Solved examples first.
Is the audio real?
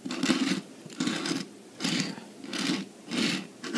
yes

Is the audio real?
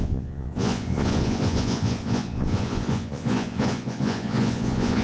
no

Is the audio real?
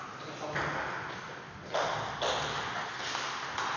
yes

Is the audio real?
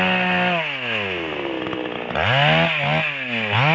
yes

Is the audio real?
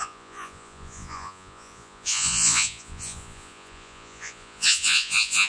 no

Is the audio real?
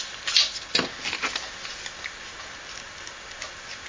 yes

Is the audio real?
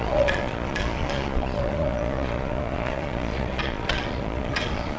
no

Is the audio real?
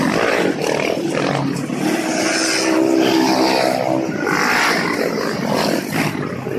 yes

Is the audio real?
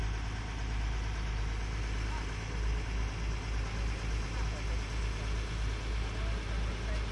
yes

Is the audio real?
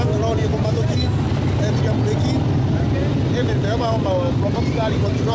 yes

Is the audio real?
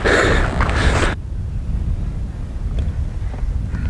yes